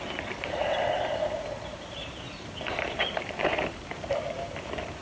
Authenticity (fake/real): fake